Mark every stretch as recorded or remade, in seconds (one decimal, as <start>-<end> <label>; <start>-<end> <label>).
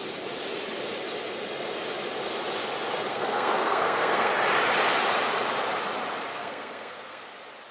0.0-3.1 recorded; 3.1-4.3 remade; 4.3-6.3 recorded; 6.3-7.3 remade; 7.3-7.7 recorded